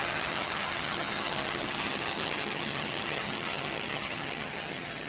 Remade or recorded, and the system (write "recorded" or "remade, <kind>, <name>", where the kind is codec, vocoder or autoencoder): remade, vocoder, HiFi-GAN